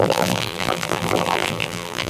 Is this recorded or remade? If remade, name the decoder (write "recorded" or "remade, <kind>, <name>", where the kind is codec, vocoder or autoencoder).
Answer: remade, vocoder, BigVGAN v2